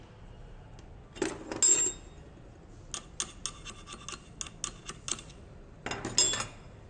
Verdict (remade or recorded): recorded